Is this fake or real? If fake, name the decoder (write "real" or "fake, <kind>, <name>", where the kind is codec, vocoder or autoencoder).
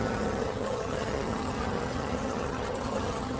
fake, vocoder, HiFi-GAN